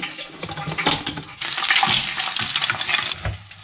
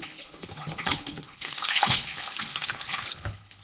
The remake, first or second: second